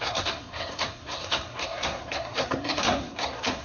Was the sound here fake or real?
fake